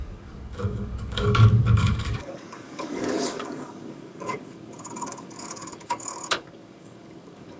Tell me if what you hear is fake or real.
fake